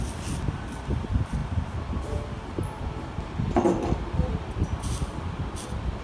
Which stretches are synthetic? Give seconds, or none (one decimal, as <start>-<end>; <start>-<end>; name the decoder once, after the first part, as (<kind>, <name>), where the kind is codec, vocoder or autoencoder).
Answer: none